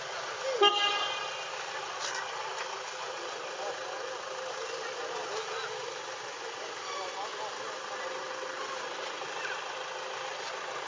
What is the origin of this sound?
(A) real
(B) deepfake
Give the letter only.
A